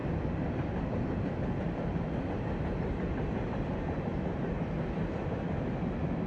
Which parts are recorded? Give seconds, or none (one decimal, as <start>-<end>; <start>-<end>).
0.0-6.3